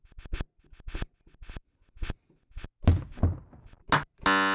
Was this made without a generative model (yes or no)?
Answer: yes